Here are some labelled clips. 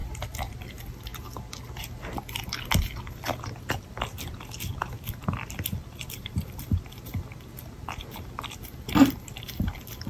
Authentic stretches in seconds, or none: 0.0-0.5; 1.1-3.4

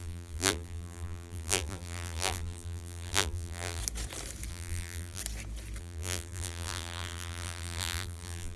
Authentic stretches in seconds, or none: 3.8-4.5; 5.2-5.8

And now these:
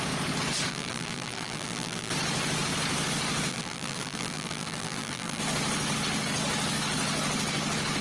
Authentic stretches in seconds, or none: 0.0-0.7; 2.1-3.5; 5.4-8.0

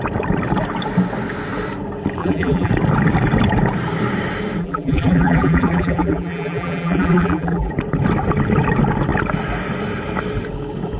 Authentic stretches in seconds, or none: 0.0-2.2; 2.7-4.6; 7.7-11.0

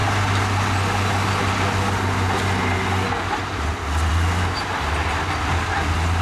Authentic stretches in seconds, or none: 0.0-6.2